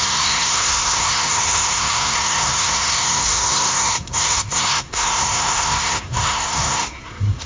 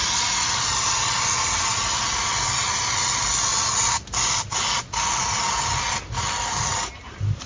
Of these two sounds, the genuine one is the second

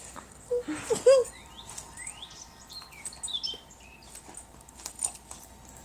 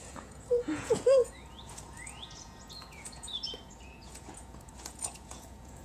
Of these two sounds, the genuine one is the first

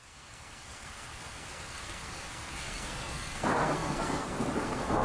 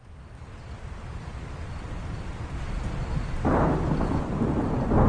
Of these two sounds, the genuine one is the second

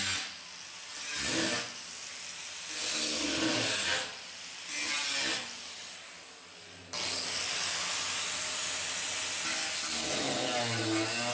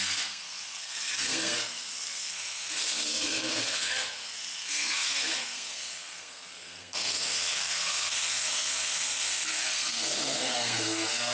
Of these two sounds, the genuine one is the first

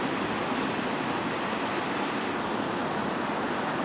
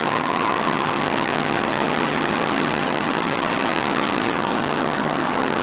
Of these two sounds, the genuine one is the first